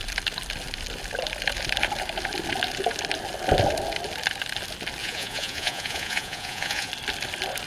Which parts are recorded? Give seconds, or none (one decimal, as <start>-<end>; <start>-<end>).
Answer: 0.0-5.0; 6.9-7.7